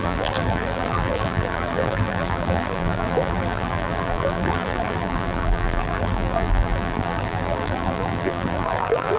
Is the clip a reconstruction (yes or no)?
yes